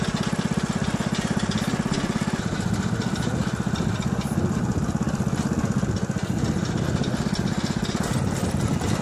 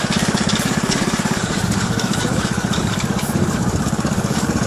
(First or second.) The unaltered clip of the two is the first